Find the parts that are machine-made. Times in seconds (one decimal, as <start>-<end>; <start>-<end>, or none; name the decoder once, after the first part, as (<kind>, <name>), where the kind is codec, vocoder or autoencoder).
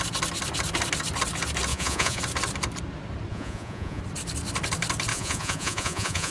1.7-2.2 (vocoder, Vocos); 3.3-4.0; 5.1-6.3